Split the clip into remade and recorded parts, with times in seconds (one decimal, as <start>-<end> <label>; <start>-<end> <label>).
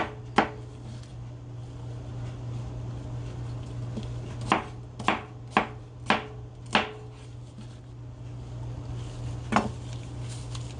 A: 0.0-10.8 recorded